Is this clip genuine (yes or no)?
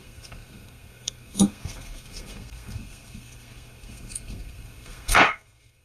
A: no